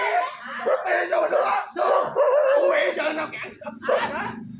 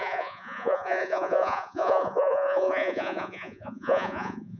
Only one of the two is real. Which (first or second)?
first